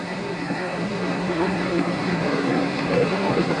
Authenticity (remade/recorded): remade